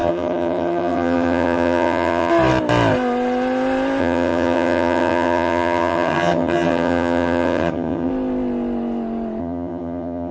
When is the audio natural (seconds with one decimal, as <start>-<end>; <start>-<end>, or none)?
2.3-4.0; 8.1-9.4